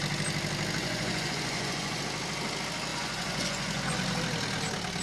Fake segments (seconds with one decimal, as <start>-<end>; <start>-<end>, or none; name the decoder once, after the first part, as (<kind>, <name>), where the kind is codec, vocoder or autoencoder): 0.8-2.0 (vocoder, Vocos); 2.9-4.2